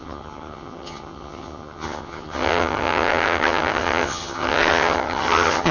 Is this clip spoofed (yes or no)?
yes